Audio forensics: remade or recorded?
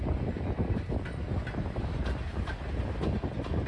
recorded